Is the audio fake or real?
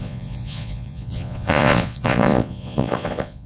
fake